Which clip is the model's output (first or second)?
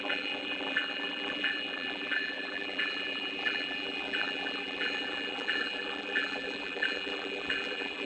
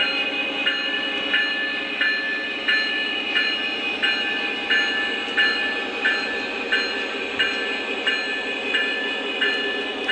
first